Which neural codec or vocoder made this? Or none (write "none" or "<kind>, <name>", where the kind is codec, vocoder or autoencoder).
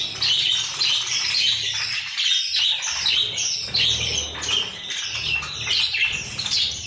none